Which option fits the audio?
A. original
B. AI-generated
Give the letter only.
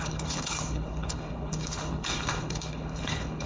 B